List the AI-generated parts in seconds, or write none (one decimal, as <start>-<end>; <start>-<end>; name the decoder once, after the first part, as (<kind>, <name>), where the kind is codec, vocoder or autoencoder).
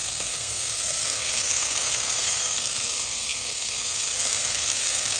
0.0-5.2 (codec, SNAC)